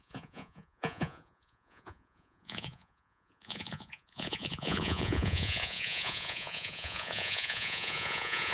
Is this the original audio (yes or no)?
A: no